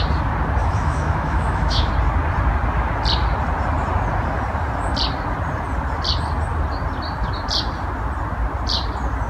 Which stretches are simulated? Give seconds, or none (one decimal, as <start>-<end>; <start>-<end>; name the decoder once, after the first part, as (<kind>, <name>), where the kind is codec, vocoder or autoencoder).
0.6-1.9 (autoencoder, DAC-VAE)